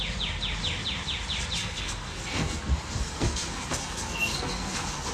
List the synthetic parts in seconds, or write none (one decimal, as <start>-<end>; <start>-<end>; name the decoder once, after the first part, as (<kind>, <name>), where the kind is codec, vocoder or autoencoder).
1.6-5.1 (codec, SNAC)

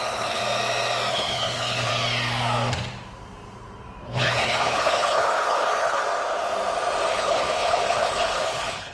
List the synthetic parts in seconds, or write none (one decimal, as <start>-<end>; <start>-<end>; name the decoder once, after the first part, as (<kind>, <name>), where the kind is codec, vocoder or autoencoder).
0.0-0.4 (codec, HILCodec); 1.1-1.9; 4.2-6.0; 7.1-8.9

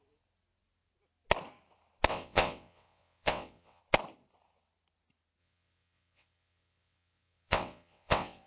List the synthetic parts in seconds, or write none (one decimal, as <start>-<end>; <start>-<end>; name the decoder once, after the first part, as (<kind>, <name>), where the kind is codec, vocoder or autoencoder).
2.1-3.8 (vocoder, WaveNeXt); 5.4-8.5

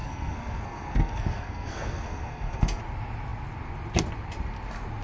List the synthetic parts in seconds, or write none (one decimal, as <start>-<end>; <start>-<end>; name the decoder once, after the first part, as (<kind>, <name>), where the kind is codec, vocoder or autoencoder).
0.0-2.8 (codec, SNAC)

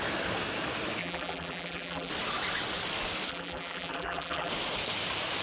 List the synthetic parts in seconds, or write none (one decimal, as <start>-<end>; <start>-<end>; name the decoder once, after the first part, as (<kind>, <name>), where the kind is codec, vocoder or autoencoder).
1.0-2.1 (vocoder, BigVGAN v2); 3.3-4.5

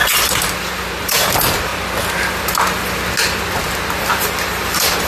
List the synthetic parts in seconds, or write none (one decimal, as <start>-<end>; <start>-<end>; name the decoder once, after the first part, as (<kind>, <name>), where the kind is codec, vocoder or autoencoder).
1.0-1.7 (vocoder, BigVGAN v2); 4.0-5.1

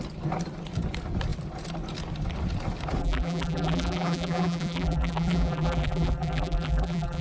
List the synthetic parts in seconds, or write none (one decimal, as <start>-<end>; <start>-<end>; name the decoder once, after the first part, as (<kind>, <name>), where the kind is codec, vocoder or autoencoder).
3.0-7.2 (vocoder, BigVGAN v2)